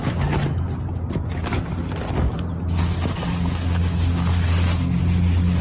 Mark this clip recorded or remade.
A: recorded